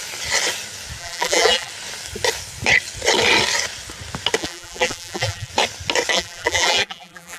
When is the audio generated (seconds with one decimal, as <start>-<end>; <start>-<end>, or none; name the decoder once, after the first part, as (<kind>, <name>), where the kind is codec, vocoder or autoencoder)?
1.0-1.7 (vocoder, BigVGAN v2); 4.4-5.5; 6.1-7.4